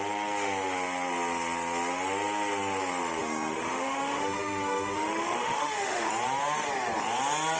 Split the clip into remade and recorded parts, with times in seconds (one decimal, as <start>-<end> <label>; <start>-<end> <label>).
0.0-3.2 recorded; 3.2-6.1 remade; 6.1-7.6 recorded